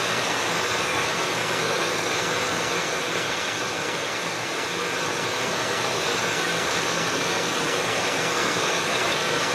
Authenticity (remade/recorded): remade